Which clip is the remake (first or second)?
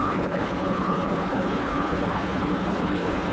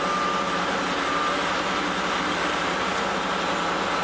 first